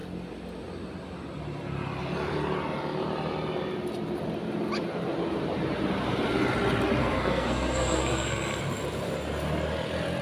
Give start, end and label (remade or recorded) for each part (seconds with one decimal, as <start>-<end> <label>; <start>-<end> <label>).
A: 0.0-7.0 recorded; 7.0-8.6 remade; 8.6-10.2 recorded